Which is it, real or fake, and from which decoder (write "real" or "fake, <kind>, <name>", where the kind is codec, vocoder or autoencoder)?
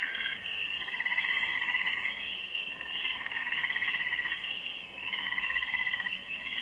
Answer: fake, codec, SNAC